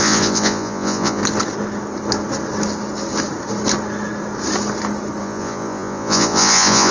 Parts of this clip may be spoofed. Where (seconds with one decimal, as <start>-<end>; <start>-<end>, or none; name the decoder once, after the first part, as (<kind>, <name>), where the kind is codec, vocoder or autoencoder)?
0.0-1.2 (vocoder, Vocos); 5.2-6.9